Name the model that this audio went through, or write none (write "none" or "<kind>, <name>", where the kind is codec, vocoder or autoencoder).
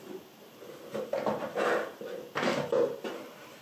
none